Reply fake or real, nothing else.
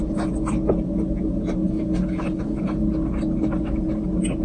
real